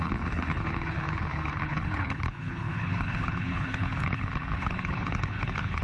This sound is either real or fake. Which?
fake